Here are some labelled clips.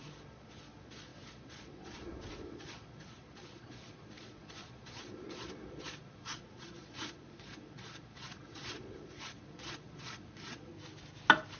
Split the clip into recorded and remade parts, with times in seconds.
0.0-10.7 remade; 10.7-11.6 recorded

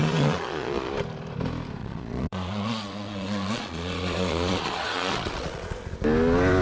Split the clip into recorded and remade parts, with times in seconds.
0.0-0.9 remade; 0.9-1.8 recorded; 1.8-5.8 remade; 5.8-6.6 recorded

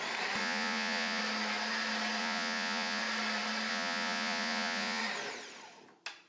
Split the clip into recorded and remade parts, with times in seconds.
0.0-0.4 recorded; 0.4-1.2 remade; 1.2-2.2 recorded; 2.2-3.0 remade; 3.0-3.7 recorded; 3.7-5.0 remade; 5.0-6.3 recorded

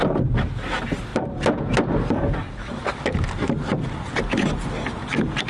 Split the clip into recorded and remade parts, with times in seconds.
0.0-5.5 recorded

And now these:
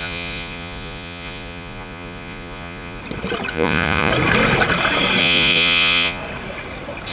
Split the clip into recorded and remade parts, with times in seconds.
0.0-3.0 remade; 3.0-3.5 recorded; 3.5-4.1 remade; 4.1-5.2 recorded; 5.2-6.2 remade; 6.2-7.1 recorded

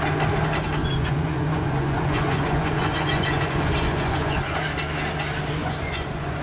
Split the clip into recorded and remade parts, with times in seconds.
0.0-0.8 recorded; 0.8-4.6 remade; 4.6-5.6 recorded; 5.6-6.4 remade

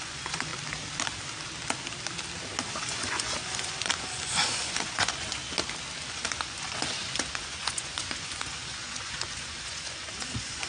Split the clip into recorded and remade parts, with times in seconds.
0.0-0.5 remade; 0.5-2.8 recorded; 2.8-5.4 remade; 5.4-6.1 recorded; 6.1-10.7 remade

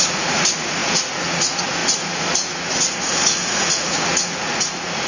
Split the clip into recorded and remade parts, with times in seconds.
0.0-5.1 remade